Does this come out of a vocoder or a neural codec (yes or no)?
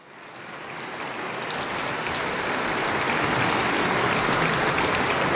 no